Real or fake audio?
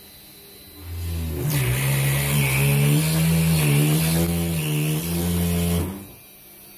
real